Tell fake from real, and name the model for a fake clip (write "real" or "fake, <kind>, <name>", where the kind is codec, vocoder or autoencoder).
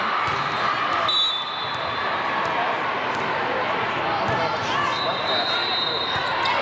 real